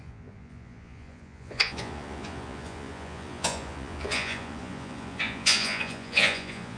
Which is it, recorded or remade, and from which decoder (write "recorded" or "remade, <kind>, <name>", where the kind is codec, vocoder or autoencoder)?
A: remade, vocoder, Vocos